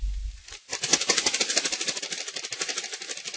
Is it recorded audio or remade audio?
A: recorded